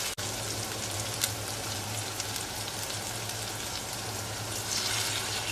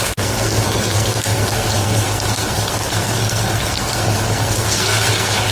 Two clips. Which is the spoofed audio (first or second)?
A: second